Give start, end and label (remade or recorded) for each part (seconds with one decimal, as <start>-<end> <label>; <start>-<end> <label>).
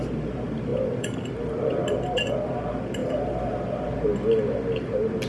0.0-0.7 recorded; 0.7-1.7 remade; 1.7-3.0 recorded; 3.0-3.9 remade; 3.9-5.3 recorded